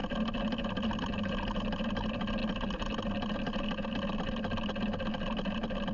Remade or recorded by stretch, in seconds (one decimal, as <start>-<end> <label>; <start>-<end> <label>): 0.0-5.9 recorded